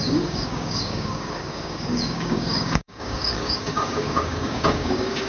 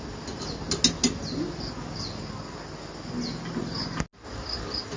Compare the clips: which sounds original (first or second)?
second